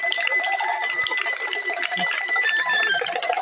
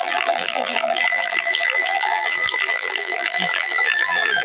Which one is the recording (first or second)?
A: first